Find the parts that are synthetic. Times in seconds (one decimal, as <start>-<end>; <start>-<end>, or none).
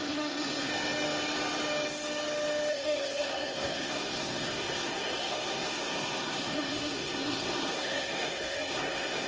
0.0-0.7; 2.7-9.3